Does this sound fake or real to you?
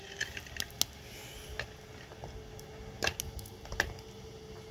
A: real